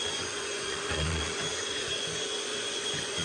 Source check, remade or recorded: remade